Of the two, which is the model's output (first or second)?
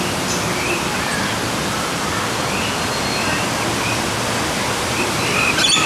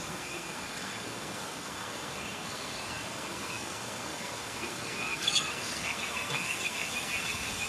second